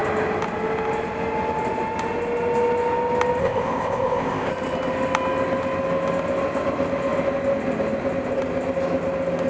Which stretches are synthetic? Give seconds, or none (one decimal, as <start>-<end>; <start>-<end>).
3.4-4.5